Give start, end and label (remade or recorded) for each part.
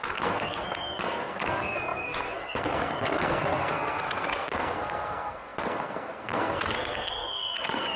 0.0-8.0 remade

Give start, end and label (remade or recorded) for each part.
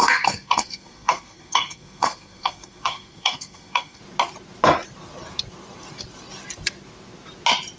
0.0-4.0 remade; 4.0-7.8 recorded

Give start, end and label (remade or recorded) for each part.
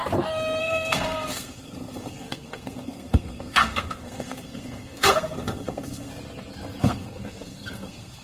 0.0-0.6 recorded; 0.6-6.1 remade; 6.1-6.8 recorded; 6.8-8.2 remade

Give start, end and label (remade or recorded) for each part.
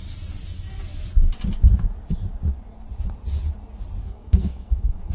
0.0-4.0 recorded; 4.0-5.1 remade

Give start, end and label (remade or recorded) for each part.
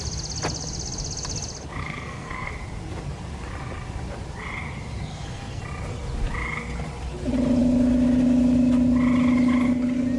0.0-1.8 recorded; 1.8-2.5 remade; 2.5-5.1 recorded; 5.1-5.6 remade; 5.6-10.2 recorded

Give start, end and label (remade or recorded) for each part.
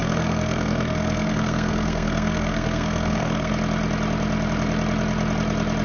0.0-3.5 remade; 3.5-5.8 recorded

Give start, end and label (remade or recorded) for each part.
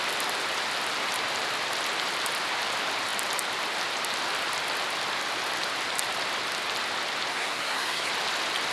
0.0-7.3 recorded; 7.3-8.1 remade; 8.1-8.7 recorded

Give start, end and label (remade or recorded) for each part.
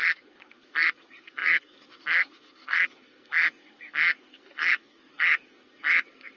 0.0-6.4 remade